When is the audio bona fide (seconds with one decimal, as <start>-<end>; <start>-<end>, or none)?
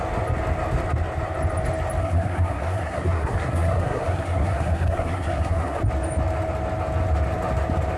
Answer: 0.0-2.0; 5.8-8.0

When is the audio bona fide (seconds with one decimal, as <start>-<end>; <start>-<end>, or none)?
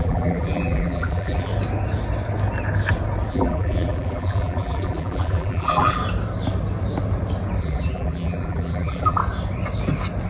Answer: 1.5-3.3; 6.0-7.6; 9.2-10.3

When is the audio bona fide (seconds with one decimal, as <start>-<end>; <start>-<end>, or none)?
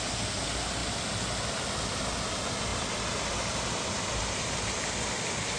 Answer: 0.0-2.7; 4.2-5.6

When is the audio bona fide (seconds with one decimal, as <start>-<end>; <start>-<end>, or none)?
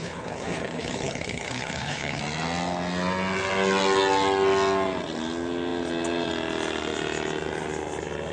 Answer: 2.2-8.3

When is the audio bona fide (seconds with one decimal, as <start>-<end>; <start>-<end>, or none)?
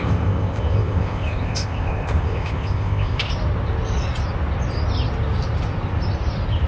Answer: 3.3-6.7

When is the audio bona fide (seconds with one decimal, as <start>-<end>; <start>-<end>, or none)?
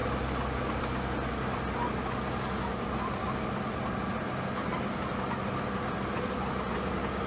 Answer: 0.0-7.3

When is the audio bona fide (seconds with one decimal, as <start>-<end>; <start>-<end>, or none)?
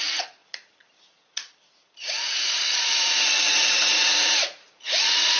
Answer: none